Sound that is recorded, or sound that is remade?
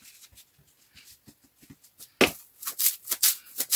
recorded